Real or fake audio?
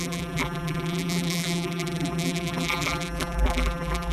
fake